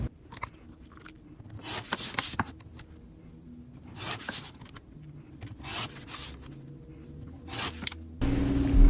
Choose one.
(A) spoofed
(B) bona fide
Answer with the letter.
B